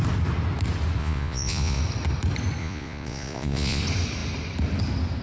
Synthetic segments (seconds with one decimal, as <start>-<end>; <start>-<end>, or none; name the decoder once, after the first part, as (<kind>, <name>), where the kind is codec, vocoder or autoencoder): 1.0-1.8 (vocoder, Vocos); 2.6-3.8